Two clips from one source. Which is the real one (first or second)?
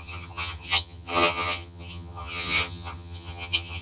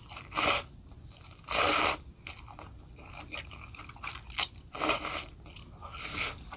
second